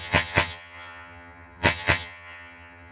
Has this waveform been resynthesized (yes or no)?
yes